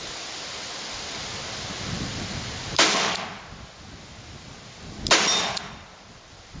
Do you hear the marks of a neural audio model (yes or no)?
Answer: no